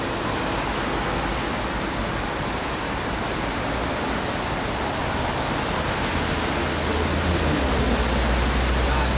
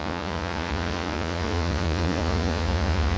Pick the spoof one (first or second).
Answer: second